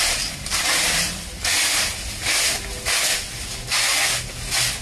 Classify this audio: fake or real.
real